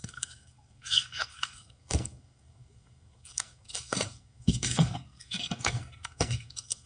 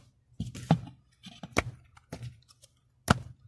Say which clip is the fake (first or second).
first